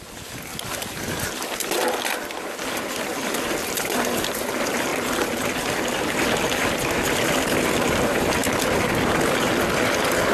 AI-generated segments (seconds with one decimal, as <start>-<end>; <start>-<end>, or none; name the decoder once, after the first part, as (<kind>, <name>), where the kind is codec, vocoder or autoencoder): 0.0-4.9 (vocoder, BigVGAN v2); 5.9-8.4

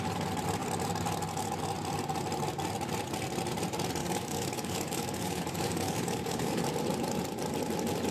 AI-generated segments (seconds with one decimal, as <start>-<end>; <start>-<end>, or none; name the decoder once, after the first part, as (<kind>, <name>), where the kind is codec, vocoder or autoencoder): 4.0-6.6 (codec, DAC)

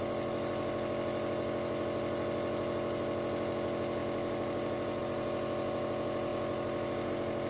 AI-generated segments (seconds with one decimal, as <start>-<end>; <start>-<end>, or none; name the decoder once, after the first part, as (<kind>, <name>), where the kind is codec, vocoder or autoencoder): none

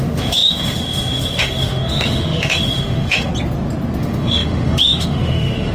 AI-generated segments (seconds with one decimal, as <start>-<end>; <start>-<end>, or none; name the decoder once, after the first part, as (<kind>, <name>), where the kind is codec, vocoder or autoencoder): 0.0-3.3 (autoencoder, DAC-VAE); 4.0-5.7

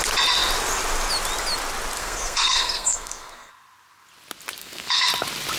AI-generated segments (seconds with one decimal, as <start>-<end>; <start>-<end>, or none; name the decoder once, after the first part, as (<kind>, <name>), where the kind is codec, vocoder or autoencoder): 2.0-3.5 (codec, SNAC); 4.6-5.1